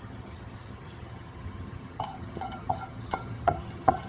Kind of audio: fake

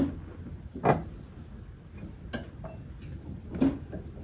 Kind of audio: real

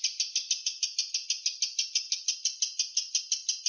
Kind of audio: real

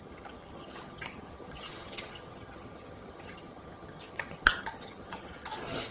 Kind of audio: fake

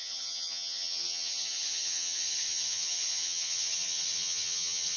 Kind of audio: fake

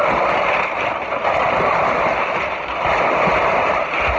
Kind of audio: real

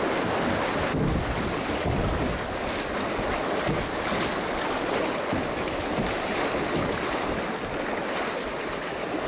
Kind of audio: real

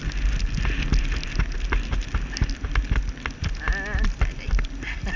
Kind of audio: real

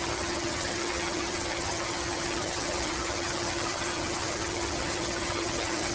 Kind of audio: fake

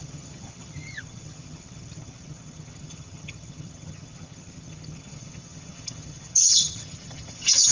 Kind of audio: fake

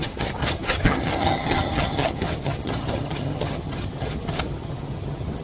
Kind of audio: fake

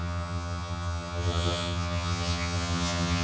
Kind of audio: fake